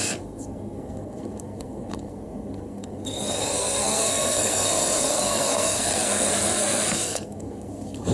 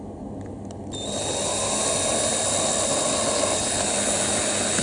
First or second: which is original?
second